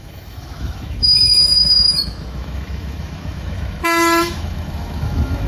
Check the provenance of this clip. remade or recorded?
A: remade